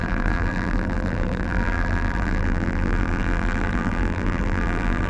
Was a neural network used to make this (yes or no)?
yes